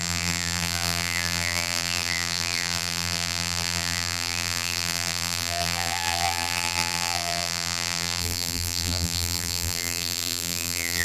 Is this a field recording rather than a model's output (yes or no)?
no